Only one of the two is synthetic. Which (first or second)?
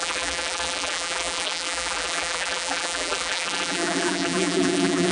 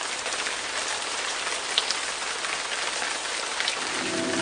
first